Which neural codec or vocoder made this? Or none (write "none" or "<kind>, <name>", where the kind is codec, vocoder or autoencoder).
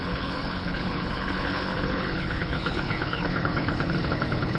codec, HILCodec